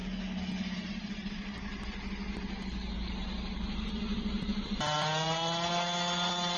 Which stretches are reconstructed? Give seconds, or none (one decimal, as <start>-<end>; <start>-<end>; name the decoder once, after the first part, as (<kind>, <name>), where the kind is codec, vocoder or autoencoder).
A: none